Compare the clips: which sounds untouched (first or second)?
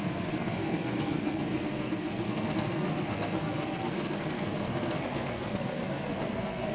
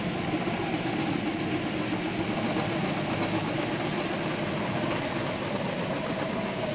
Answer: second